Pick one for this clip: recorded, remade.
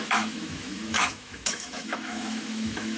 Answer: remade